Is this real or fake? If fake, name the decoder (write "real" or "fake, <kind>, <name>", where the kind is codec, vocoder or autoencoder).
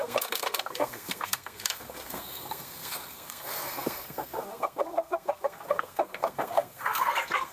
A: fake, codec, SNAC